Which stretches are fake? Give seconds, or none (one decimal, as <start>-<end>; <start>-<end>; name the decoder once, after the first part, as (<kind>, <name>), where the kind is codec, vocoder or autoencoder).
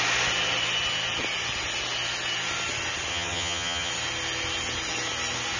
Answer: 3.1-3.9 (vocoder, HiFi-GAN)